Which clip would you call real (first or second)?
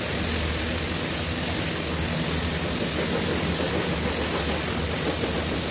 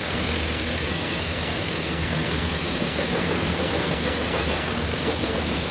first